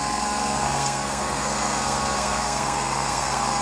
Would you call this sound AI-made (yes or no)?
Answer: yes